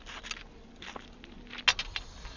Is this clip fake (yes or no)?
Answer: no